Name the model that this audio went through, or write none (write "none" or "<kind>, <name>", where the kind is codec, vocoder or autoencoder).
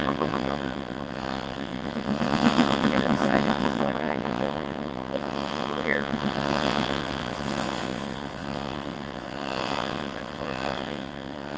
vocoder, WaveNeXt